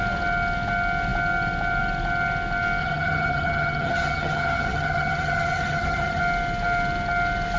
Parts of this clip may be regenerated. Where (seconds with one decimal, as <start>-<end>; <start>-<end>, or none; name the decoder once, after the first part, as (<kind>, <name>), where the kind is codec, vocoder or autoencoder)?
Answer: 2.8-6.2 (vocoder, HiFi-GAN)